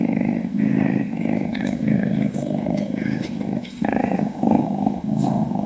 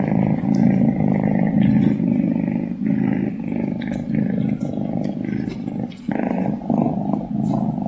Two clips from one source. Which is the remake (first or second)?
first